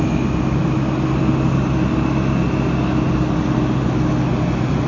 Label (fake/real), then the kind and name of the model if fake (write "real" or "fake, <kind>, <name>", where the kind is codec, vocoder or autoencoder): real